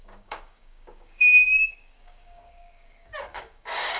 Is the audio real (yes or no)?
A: no